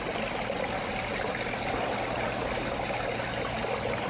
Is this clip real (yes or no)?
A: yes